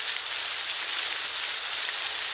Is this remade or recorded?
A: recorded